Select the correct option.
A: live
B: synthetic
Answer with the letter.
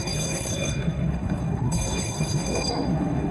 B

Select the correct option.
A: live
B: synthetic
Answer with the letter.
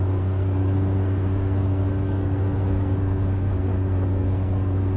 B